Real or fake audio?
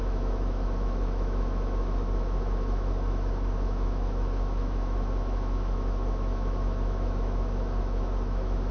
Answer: fake